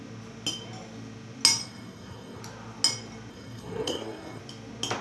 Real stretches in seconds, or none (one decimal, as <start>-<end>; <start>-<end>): 0.0-1.6; 2.4-3.3; 4.4-5.0